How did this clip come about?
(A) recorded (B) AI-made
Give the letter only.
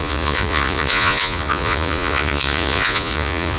B